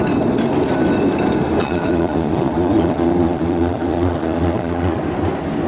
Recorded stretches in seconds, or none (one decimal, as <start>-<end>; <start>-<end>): 0.0-1.6; 5.0-5.7